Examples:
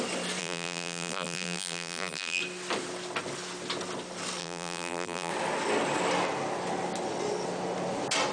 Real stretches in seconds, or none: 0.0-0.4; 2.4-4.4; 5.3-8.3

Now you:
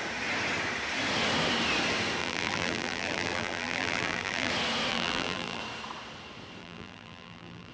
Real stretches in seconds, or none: 0.0-2.2; 4.5-4.9; 5.6-6.6

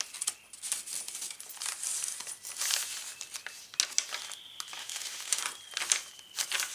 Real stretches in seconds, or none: 0.0-4.8; 5.4-6.7

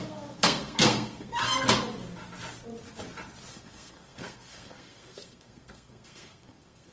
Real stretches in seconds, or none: 1.4-3.5

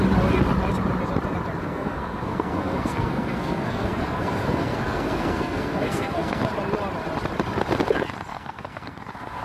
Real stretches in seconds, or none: 0.0-1.6; 6.4-8.3

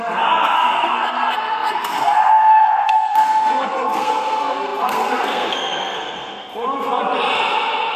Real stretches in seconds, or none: 7.0-8.0